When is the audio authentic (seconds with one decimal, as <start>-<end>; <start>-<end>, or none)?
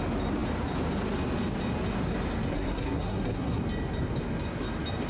0.0-2.5; 3.6-5.1